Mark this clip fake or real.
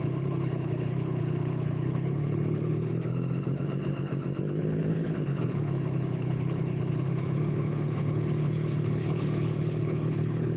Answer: fake